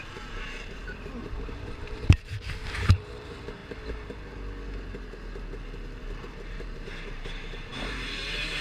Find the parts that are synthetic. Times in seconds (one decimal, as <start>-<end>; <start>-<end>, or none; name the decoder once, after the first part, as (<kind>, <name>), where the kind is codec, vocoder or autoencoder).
0.0-3.6 (vocoder, BigVGAN v2); 6.0-8.6